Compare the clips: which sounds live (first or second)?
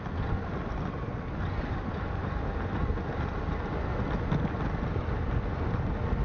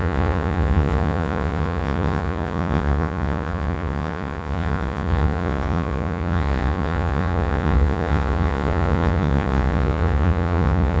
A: first